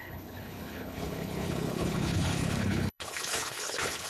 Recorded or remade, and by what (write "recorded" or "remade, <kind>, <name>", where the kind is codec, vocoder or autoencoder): remade, codec, HILCodec